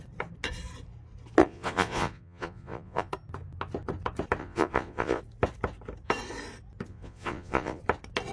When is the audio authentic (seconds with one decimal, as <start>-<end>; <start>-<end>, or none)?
0.0-1.4; 3.1-4.4; 5.2-6.9; 7.8-8.3